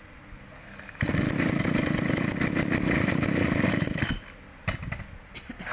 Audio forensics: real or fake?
real